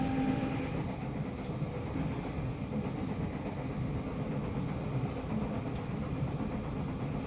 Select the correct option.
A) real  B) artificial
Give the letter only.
A